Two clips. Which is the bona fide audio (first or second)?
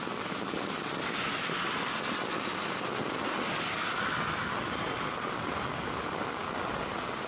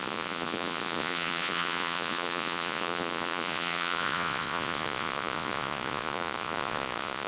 first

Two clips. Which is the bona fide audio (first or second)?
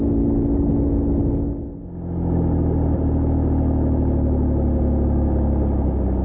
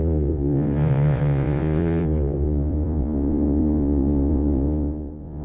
first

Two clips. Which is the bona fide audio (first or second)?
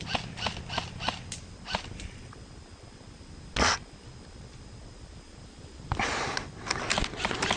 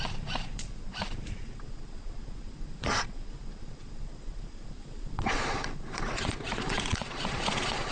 first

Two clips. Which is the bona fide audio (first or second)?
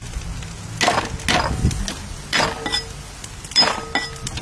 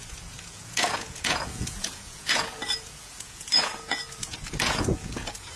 first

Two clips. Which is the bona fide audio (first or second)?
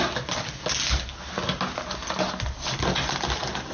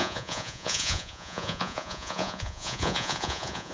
first